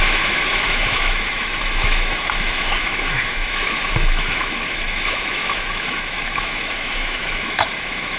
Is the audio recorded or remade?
remade